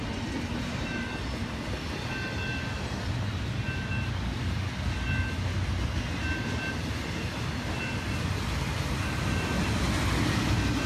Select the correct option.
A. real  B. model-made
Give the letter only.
A